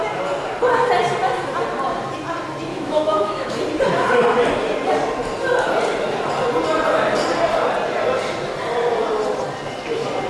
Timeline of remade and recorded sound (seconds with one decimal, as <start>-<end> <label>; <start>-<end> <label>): 0.0-2.7 recorded; 2.7-3.6 remade; 3.6-10.3 recorded